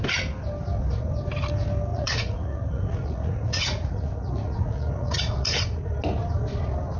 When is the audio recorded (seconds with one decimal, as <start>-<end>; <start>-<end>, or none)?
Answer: 0.0-1.9; 5.6-7.0